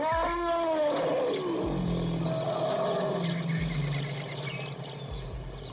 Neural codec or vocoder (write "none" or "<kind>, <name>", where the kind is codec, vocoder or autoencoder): none